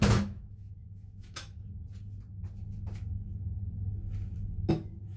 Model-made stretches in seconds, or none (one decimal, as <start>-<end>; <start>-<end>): 0.0-1.6; 4.7-5.2